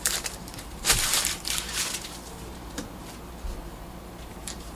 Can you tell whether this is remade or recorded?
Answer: remade